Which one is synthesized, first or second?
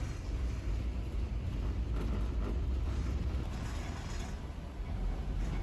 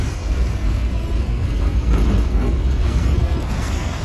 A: second